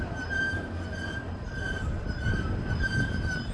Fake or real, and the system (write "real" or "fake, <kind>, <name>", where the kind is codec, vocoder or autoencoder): real